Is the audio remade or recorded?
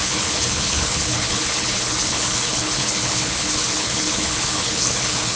remade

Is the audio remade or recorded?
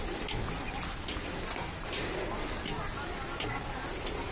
recorded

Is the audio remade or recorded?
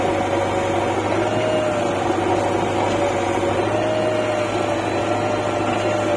recorded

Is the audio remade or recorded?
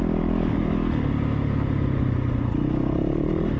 recorded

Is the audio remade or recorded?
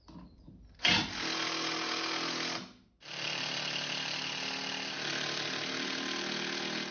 recorded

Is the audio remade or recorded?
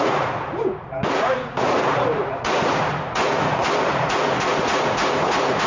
remade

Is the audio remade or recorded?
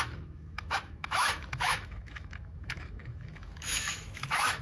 remade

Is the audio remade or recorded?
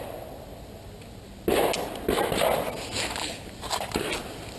recorded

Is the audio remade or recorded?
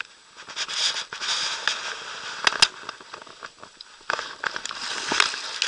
recorded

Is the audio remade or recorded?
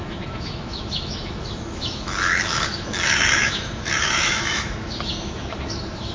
remade